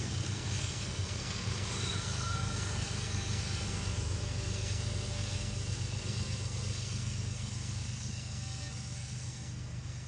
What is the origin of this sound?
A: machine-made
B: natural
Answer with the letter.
A